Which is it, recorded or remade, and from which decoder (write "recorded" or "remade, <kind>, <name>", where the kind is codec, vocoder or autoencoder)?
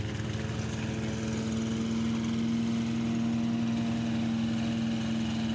recorded